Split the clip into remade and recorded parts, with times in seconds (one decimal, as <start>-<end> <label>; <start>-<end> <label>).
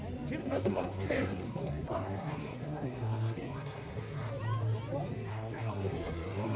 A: 0.0-0.4 recorded; 0.4-4.3 remade; 4.3-5.3 recorded; 5.3-6.6 remade